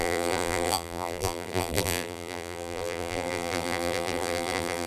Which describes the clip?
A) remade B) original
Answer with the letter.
A